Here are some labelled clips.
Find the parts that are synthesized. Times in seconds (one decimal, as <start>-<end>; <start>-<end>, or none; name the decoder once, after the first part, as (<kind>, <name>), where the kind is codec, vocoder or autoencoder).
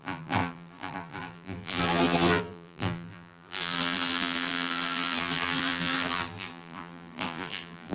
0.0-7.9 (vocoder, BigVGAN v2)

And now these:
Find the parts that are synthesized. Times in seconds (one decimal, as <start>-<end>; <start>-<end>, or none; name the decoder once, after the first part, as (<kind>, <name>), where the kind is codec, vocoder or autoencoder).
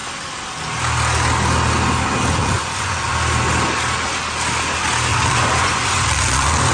2.4-3.1 (vocoder, Vocos); 5.1-6.7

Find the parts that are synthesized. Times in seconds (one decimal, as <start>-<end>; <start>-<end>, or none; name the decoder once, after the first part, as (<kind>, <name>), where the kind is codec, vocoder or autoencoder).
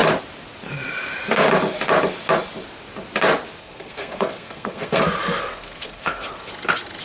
3.6-5.0 (codec, SNAC); 5.4-6.5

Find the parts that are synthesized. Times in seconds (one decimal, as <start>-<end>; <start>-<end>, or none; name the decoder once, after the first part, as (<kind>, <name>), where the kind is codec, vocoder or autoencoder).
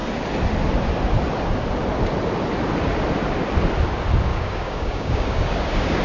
4.3-6.0 (codec, DAC)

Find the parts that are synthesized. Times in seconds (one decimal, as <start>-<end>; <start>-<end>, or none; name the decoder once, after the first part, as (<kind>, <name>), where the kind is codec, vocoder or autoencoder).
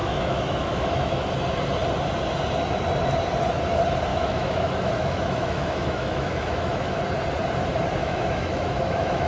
0.0-1.3 (autoencoder, DAC-VAE); 4.1-7.0; 8.0-9.3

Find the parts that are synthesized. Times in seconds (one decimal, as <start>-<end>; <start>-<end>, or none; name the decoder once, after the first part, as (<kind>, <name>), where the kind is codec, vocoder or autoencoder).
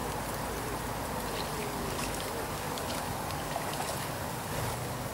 1.6-5.1 (codec, DAC)